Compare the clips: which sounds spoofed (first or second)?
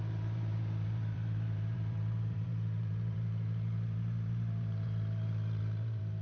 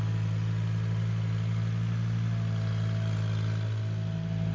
first